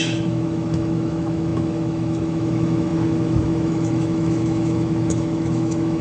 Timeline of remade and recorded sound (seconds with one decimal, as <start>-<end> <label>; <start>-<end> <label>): 0.0-6.0 remade